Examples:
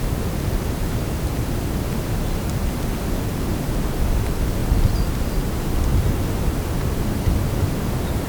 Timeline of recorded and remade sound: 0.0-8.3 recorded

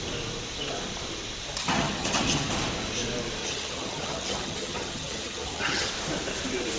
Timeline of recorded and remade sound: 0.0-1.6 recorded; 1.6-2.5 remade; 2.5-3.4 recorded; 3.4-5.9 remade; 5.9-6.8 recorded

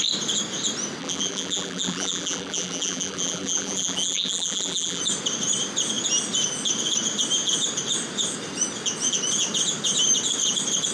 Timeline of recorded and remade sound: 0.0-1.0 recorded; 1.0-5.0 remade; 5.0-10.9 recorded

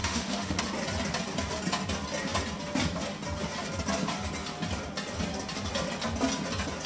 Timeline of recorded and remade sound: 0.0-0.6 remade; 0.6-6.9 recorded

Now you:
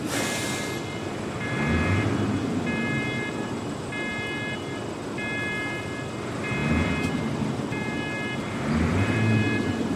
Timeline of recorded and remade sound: 0.0-10.0 recorded

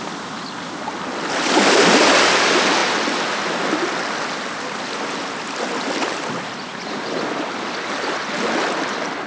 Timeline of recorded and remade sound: 0.0-9.3 recorded